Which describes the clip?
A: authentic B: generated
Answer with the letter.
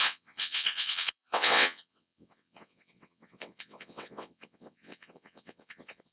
B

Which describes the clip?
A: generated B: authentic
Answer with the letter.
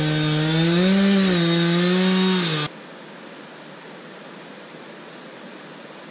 B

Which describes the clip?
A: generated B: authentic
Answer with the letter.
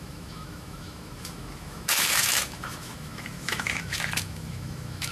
A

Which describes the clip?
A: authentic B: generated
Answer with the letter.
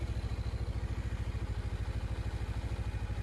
A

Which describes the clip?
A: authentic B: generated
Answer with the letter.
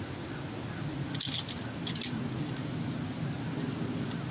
A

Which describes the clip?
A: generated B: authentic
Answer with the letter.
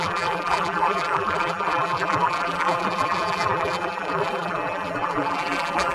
A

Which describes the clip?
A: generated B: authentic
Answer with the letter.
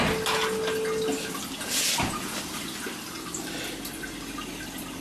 B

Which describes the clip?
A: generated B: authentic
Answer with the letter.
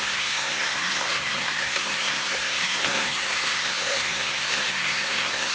A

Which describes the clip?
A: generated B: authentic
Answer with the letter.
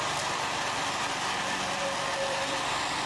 A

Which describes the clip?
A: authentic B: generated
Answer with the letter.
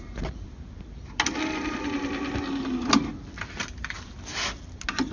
A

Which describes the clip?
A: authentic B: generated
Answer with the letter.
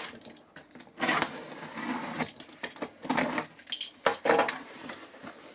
A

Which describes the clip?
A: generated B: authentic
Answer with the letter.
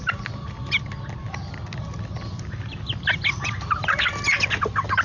B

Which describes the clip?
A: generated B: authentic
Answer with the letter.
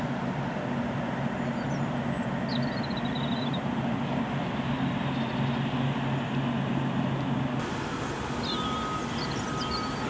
B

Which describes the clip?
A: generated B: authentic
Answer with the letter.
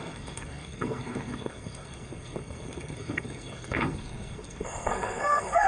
A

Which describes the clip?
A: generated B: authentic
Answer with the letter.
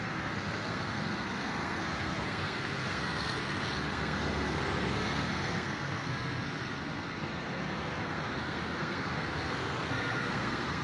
A